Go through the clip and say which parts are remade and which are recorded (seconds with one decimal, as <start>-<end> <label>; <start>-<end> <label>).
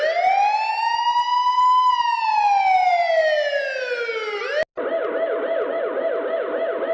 0.0-6.9 recorded